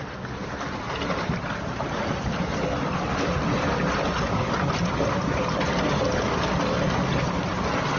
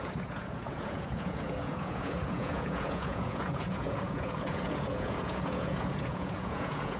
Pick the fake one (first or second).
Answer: second